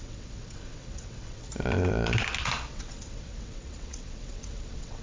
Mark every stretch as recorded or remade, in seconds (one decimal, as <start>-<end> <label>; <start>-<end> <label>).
0.0-1.5 remade; 1.5-2.7 recorded; 2.7-5.0 remade